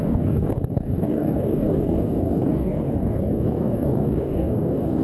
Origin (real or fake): fake